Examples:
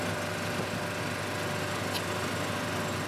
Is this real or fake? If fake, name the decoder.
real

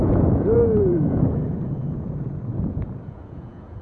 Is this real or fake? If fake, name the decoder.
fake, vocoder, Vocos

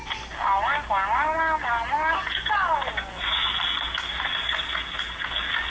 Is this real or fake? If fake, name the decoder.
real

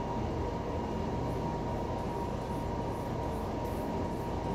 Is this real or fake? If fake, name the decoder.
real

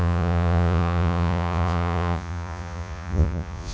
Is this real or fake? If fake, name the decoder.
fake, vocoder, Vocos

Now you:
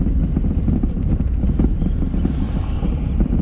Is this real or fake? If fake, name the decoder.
fake, vocoder, BigVGAN v2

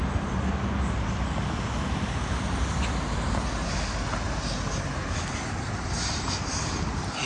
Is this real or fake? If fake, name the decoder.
real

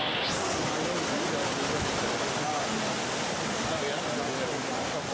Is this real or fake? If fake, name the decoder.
real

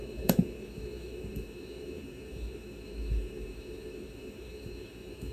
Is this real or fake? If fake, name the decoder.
fake, autoencoder, DAC-VAE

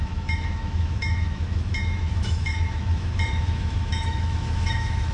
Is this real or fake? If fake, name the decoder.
fake, autoencoder, DAC-VAE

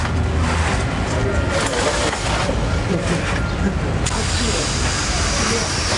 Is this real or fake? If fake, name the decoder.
real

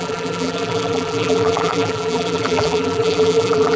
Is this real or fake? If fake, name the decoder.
fake, vocoder, BigVGAN v2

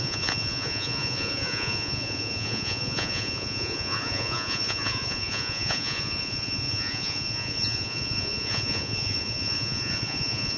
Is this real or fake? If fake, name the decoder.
fake, vocoder, Vocos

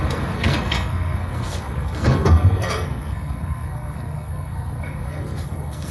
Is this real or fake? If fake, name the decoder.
fake, codec, SNAC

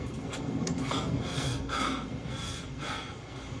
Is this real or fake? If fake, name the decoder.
fake, codec, SNAC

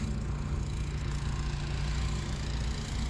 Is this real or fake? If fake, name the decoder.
real